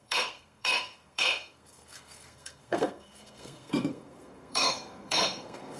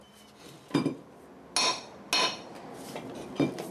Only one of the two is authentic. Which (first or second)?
second